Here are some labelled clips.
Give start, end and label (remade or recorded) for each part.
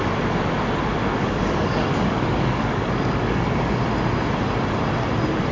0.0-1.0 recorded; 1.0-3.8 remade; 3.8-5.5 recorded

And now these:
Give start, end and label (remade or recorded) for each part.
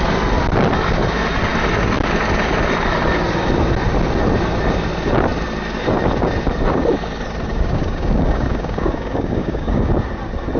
0.0-7.5 recorded; 7.5-9.9 remade; 9.9-10.6 recorded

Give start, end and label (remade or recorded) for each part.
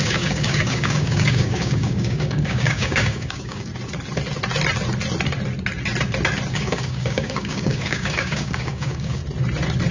0.0-3.7 remade; 3.7-6.5 recorded; 6.5-9.2 remade; 9.2-9.9 recorded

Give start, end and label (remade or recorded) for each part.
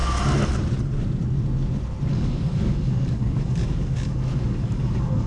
0.0-2.1 recorded; 2.1-5.3 remade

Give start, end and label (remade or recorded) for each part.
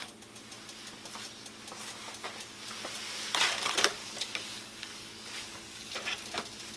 0.0-4.0 recorded; 4.0-5.9 remade; 5.9-6.8 recorded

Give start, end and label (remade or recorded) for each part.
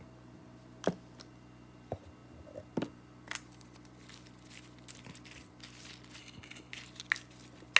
0.0-6.2 recorded; 6.2-6.7 remade; 6.7-7.8 recorded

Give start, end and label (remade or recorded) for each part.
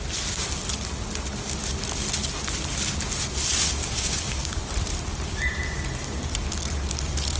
0.0-3.8 recorded; 3.8-4.6 remade; 4.6-7.4 recorded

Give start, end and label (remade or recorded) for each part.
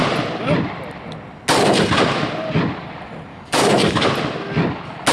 0.0-3.3 recorded; 3.3-4.1 remade; 4.1-5.1 recorded